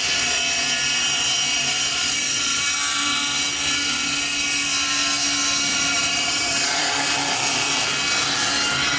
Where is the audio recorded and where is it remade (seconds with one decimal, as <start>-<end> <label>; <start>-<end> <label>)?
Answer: 0.0-1.9 recorded; 1.9-2.6 remade; 2.6-5.7 recorded; 5.7-6.9 remade; 6.9-9.0 recorded